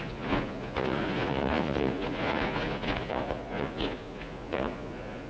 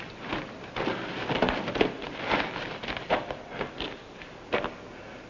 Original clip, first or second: second